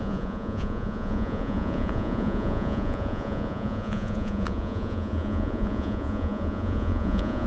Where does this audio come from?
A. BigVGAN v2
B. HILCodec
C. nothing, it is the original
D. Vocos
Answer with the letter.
D